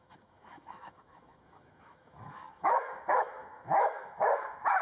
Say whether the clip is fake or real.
fake